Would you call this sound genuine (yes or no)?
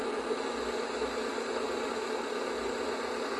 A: yes